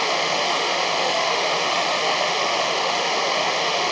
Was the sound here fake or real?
fake